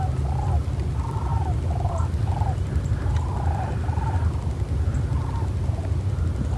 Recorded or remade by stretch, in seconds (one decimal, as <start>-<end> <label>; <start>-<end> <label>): 0.0-6.6 recorded